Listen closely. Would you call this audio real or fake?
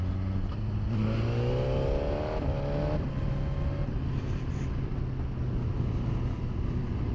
real